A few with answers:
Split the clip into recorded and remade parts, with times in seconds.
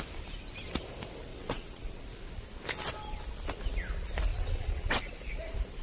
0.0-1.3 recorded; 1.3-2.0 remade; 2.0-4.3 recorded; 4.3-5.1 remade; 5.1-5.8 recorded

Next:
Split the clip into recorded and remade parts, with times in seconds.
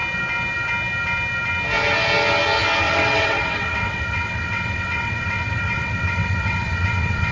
0.0-2.8 recorded; 2.8-7.3 remade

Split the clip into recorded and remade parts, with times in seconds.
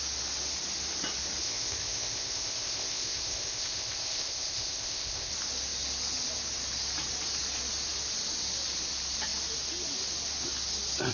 0.0-1.4 recorded; 1.4-5.3 remade; 5.3-11.1 recorded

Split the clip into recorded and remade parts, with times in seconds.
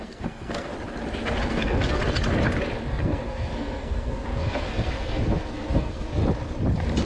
0.0-0.7 remade; 0.7-1.4 recorded; 1.4-2.0 remade; 2.0-2.9 recorded; 2.9-6.2 remade; 6.2-7.1 recorded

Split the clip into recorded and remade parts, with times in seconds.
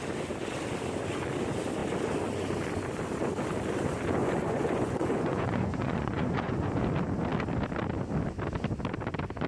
0.0-4.2 recorded; 4.2-6.8 remade; 6.8-9.5 recorded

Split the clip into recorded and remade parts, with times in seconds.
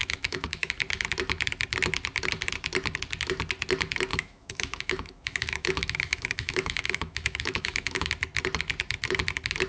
0.0-0.7 remade; 0.7-4.1 recorded; 4.1-8.1 remade; 8.1-9.7 recorded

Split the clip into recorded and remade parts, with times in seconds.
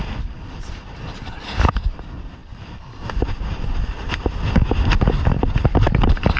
0.0-6.4 recorded